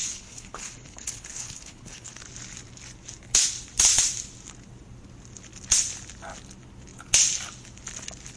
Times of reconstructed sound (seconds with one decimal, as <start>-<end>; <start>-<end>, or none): 0.0-2.2